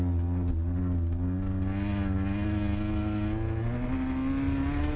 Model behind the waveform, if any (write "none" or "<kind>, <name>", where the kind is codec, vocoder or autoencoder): none